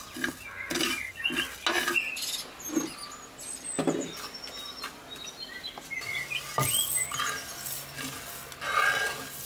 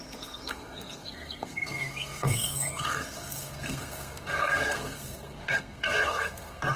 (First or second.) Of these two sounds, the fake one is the second